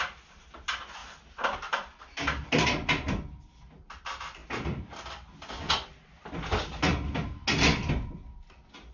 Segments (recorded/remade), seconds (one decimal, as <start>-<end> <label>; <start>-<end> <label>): 0.0-1.0 recorded; 1.0-2.0 remade; 2.0-8.9 recorded